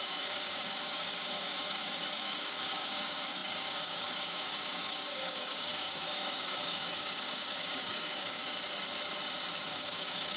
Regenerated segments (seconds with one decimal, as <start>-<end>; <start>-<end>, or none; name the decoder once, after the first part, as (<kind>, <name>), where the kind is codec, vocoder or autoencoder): 0.0-8.4 (codec, DAC); 9.7-10.4